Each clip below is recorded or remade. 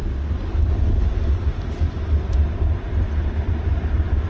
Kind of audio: recorded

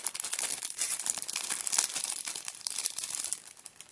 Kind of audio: remade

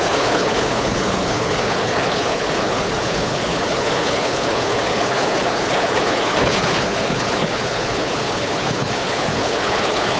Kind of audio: remade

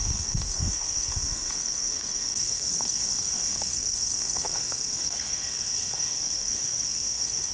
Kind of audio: remade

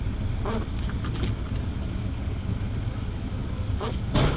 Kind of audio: recorded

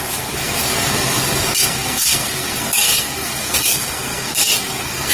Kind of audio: remade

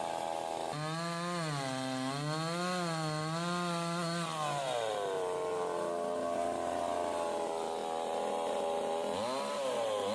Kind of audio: recorded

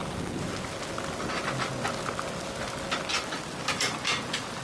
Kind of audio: recorded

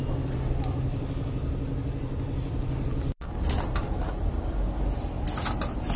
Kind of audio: recorded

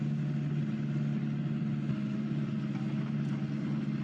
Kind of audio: recorded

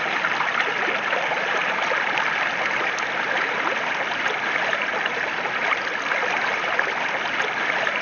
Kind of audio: recorded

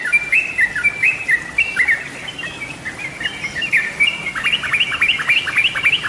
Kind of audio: recorded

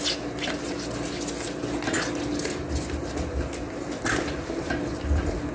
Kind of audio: recorded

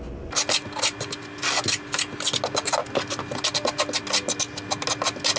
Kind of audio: recorded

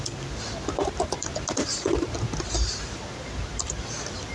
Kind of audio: recorded